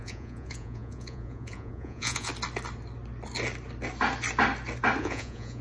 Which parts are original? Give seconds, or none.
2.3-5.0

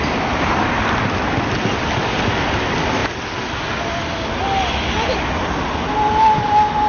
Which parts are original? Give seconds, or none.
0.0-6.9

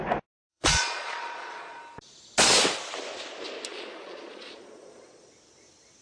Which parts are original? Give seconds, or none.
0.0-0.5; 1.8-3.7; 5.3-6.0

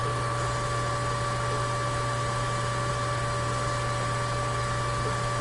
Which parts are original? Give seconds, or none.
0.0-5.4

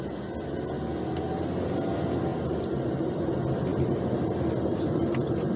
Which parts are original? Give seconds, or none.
0.0-2.3; 3.2-3.7; 4.2-4.7

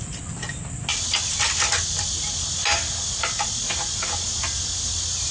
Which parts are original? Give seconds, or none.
0.0-5.3

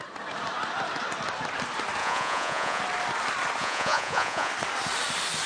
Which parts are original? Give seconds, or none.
0.0-2.0; 2.8-3.6; 4.5-5.5

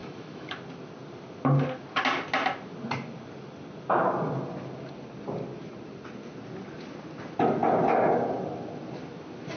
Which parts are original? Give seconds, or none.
0.5-9.6